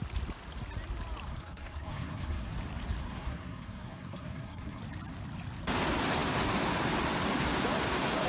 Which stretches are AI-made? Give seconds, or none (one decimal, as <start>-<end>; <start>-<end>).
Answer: 1.3-2.5; 3.0-4.8